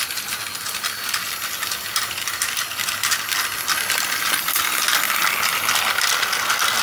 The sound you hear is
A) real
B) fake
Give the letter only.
A